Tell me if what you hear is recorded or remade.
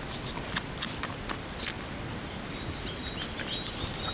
recorded